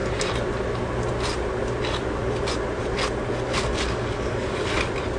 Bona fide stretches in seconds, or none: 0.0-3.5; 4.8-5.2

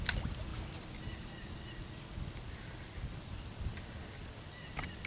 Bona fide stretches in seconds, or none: 0.0-5.1

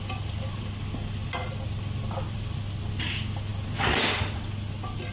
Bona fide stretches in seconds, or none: 0.0-5.1

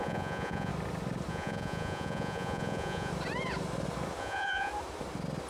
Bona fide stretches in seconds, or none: 0.7-1.3; 3.1-4.2; 4.7-5.5

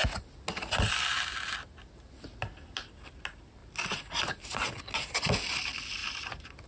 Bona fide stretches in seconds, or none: 0.0-6.7

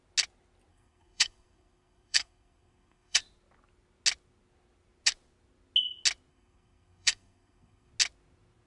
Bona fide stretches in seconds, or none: 0.0-0.7; 3.2-6.3; 7.9-8.7